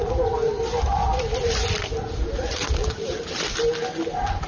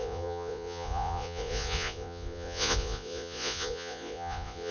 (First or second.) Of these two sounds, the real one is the first